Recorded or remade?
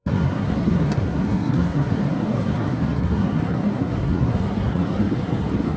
remade